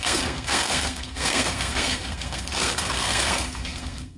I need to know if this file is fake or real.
fake